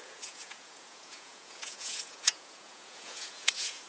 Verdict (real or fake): fake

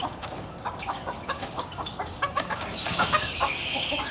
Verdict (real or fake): fake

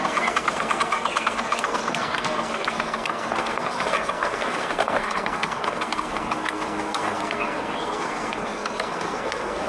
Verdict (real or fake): fake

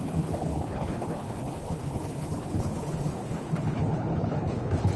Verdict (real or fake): fake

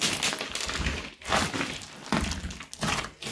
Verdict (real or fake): real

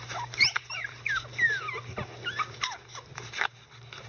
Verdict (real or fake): real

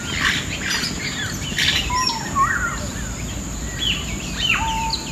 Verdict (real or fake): real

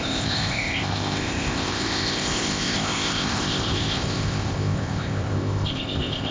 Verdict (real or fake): fake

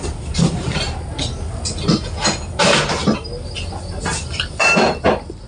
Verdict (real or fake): real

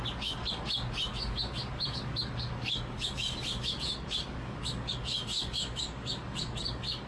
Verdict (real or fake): fake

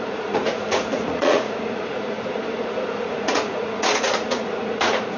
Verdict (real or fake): fake